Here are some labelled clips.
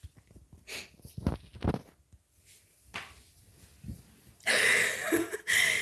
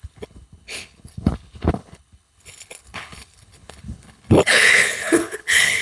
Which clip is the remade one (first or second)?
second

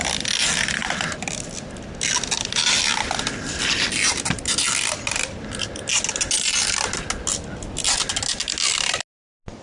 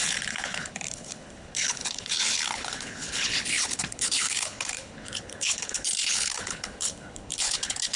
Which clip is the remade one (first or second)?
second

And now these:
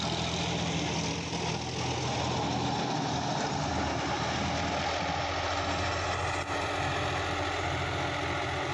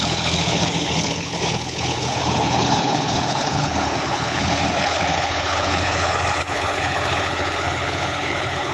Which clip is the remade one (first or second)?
second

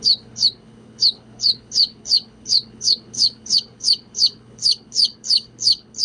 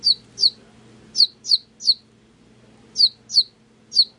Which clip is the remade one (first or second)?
first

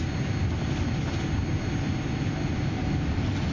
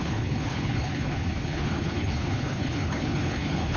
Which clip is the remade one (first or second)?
second